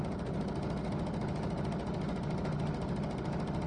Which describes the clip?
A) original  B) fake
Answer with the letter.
A